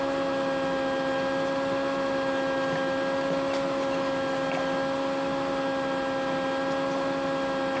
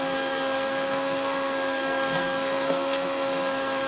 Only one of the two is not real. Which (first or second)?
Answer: second